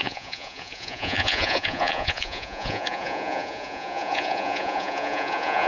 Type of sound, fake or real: fake